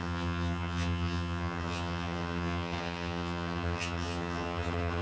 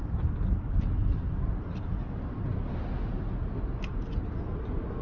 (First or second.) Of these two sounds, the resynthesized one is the first